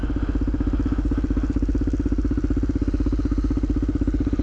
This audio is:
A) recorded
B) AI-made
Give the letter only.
A